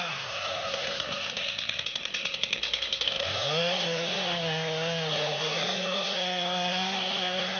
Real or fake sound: fake